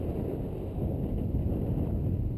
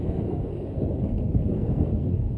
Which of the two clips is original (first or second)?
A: first